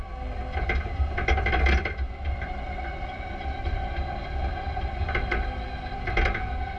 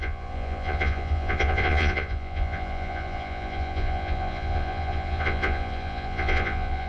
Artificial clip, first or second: second